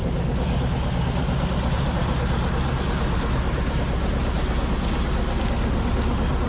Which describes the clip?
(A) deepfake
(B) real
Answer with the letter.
B